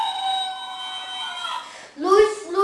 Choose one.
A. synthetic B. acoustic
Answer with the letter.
B